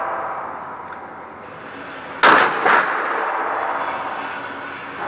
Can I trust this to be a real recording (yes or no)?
yes